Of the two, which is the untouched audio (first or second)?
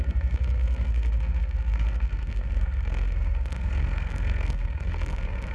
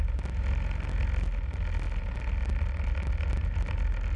second